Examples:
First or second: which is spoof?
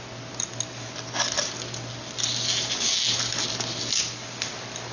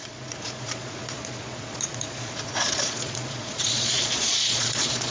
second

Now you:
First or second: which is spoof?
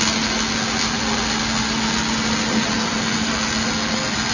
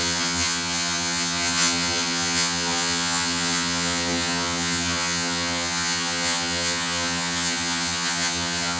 second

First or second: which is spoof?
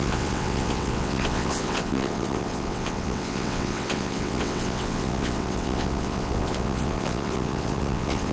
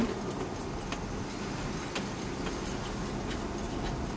first